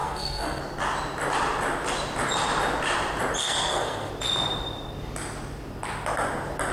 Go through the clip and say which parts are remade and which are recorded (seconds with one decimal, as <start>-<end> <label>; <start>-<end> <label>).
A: 0.0-0.6 remade; 0.6-3.4 recorded; 3.4-4.1 remade; 4.1-6.7 recorded

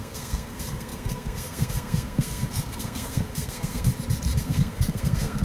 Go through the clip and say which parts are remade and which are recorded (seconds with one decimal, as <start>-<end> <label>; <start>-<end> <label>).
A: 0.0-3.9 remade; 3.9-4.4 recorded; 4.4-5.4 remade

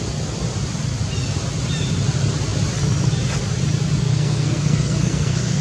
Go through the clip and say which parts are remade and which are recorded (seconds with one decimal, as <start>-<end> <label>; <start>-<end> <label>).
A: 0.0-4.0 recorded; 4.0-5.6 remade